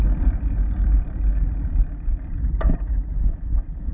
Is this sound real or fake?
fake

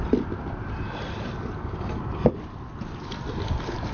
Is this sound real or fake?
real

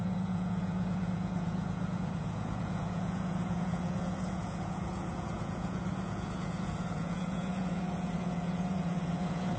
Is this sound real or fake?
fake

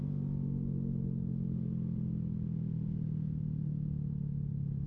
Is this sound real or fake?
real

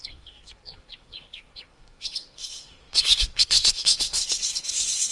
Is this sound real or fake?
fake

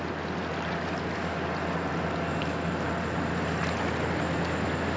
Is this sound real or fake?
real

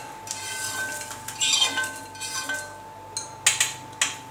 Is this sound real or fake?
real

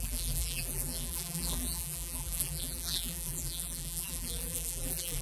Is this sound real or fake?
fake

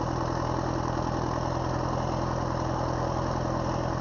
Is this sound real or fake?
real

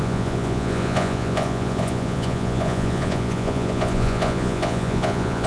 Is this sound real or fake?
fake